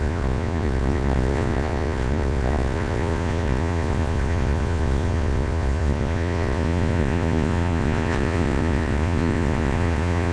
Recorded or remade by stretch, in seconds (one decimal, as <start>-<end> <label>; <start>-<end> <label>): 0.0-10.3 remade